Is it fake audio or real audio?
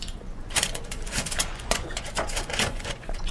fake